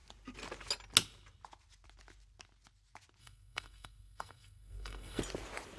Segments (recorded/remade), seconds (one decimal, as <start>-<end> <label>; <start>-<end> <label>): 0.0-3.2 recorded; 3.2-5.2 remade; 5.2-5.8 recorded